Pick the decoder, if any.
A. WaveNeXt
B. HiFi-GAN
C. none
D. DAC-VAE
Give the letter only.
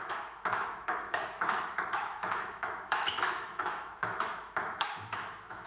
D